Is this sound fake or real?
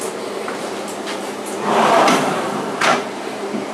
fake